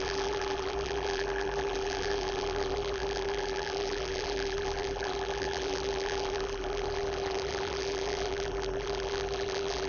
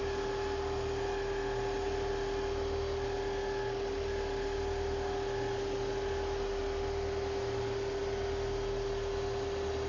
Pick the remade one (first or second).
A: first